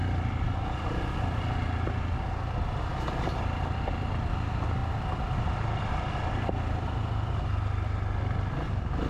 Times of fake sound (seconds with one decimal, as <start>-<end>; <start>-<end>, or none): none